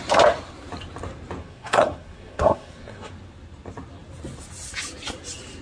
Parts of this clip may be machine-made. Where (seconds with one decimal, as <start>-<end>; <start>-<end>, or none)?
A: 1.4-3.1